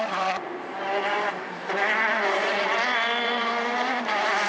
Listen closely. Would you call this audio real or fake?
fake